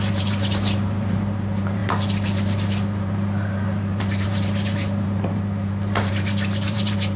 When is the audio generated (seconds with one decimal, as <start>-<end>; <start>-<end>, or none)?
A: 0.0-7.2